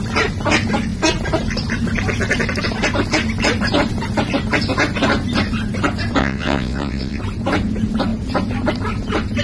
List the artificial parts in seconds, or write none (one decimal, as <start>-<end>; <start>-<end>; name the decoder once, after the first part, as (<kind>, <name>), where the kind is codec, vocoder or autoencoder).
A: 6.2-7.2 (vocoder, WaveNeXt)